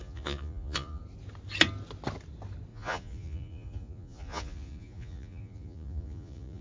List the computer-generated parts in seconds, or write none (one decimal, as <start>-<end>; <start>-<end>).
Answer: 0.0-1.0; 2.7-6.6